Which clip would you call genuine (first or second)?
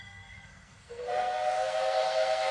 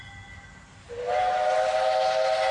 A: second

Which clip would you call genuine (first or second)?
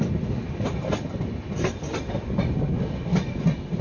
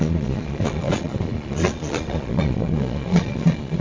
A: first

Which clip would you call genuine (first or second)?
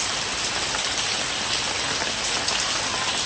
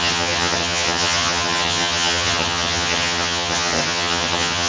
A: first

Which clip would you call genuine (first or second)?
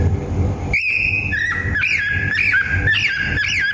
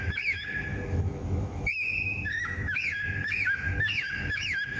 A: first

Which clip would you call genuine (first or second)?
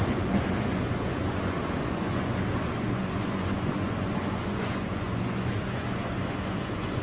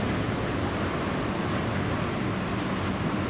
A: second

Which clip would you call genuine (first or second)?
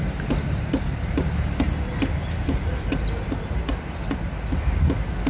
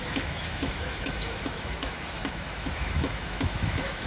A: first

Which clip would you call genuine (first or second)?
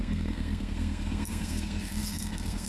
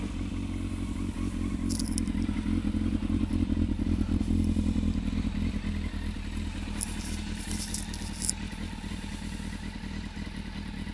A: second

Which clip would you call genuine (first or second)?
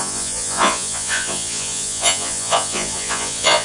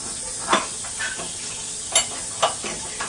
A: second